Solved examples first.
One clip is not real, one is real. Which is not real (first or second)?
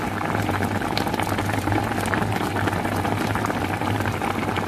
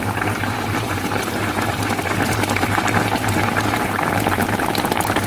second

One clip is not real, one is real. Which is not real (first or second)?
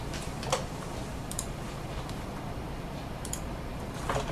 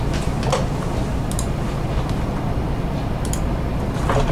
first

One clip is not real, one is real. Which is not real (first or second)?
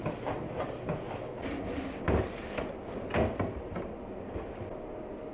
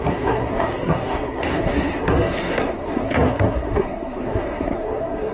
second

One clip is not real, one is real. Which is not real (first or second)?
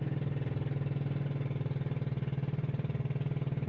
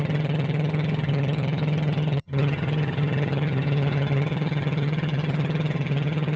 second